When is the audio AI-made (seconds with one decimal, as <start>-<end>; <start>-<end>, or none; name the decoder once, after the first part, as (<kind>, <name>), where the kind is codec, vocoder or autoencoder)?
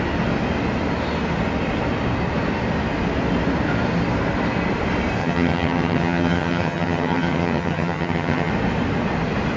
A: 5.2-8.5 (vocoder, HiFi-GAN)